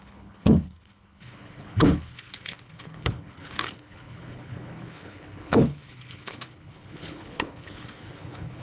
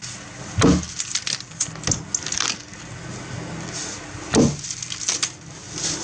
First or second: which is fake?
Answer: first